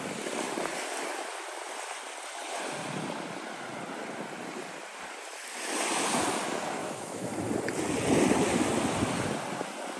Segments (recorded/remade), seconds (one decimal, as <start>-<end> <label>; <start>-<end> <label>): 0.0-6.8 recorded; 6.8-7.3 remade; 7.3-10.0 recorded